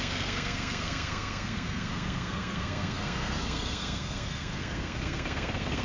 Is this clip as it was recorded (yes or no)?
no